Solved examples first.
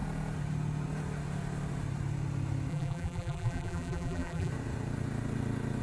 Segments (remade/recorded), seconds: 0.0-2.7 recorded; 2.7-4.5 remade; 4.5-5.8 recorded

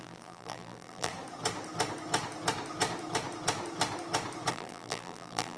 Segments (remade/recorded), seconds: 0.0-1.1 remade; 1.1-4.5 recorded; 4.5-5.6 remade

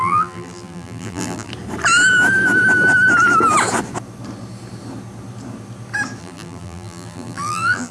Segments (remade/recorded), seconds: 0.0-1.5 remade; 1.5-6.2 recorded; 6.2-7.9 remade

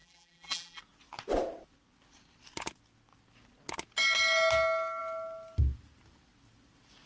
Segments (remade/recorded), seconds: 0.0-0.8 remade; 0.8-7.1 recorded